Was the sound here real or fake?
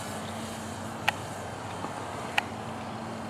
fake